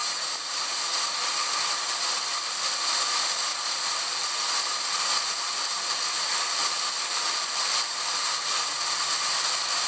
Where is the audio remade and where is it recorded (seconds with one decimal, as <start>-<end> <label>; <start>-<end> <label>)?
0.0-0.8 remade; 0.8-9.9 recorded